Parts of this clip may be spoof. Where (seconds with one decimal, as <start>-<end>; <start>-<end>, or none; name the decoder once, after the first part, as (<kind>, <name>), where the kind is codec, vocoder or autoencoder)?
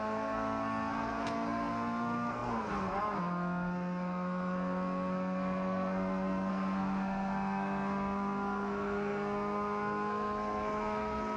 0.0-11.4 (codec, SNAC)